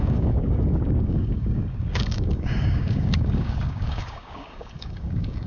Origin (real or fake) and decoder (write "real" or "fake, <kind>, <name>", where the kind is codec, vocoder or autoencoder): fake, codec, DAC